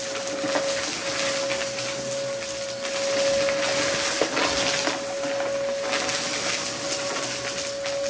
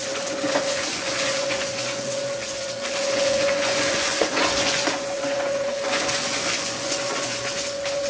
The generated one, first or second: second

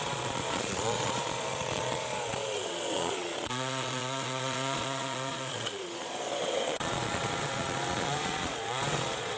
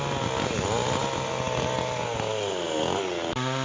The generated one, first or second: first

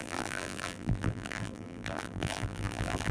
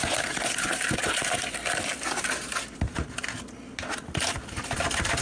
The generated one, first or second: first